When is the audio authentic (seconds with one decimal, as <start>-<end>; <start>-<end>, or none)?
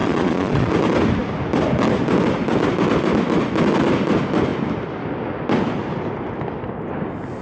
0.7-7.4